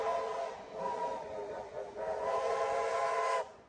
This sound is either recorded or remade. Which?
remade